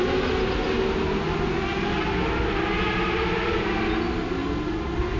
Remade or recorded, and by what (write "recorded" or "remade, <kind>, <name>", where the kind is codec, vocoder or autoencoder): recorded